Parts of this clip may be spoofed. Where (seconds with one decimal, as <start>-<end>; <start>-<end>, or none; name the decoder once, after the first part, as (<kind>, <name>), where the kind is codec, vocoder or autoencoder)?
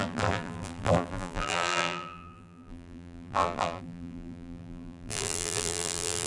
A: 0.0-6.3 (vocoder, BigVGAN v2)